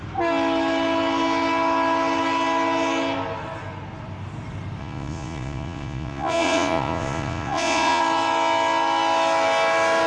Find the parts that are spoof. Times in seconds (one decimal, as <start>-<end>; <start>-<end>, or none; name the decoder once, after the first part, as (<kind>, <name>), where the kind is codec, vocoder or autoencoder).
4.8-8.0 (vocoder, Vocos)